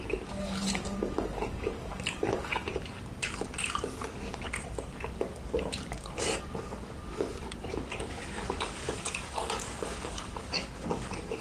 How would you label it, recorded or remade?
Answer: remade